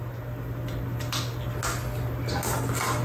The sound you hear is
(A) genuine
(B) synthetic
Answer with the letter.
A